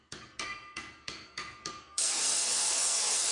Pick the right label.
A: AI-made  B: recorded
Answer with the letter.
A